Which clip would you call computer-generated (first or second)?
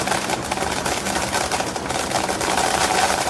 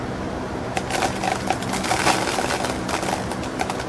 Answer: first